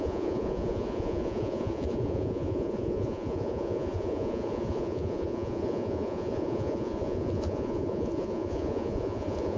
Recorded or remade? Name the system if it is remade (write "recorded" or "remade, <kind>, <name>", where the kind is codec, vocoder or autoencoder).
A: remade, vocoder, Vocos